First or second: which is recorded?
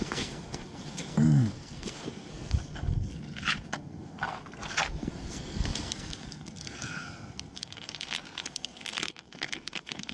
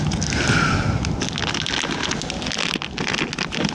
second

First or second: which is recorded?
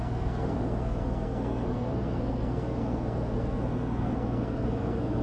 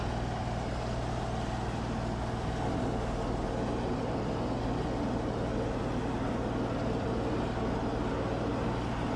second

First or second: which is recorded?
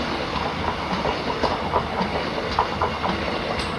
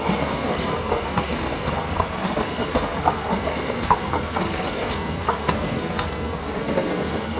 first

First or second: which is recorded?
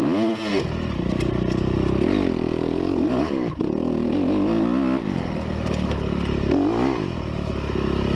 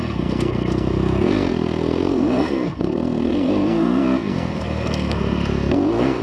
first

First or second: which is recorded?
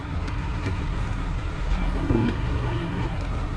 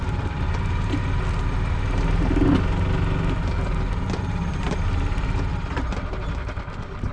second